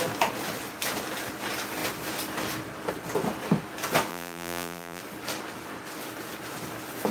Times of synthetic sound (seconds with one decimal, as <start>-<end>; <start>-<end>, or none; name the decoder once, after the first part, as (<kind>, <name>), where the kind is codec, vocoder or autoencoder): 4.1-5.0 (vocoder, BigVGAN v2)